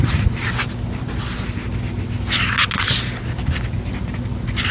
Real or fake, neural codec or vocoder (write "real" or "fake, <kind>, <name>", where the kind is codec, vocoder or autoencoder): real